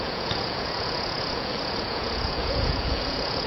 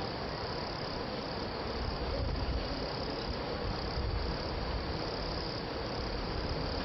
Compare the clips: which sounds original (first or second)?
second